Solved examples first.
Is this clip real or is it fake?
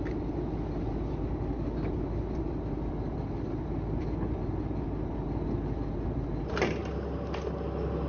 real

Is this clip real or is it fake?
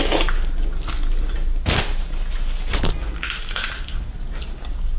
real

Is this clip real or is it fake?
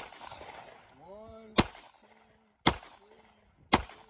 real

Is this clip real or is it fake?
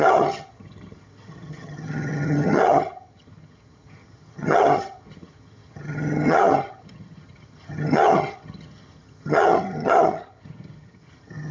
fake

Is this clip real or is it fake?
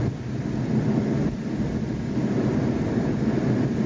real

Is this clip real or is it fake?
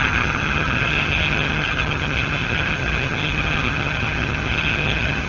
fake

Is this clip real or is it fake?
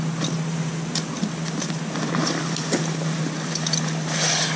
real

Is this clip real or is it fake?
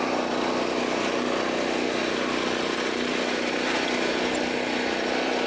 real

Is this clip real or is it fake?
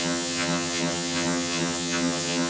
fake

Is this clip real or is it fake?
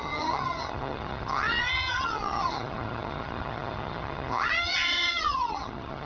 fake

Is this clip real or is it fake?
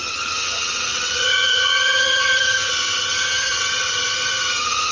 fake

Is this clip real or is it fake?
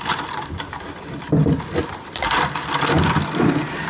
real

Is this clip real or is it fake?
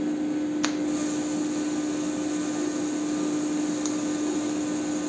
real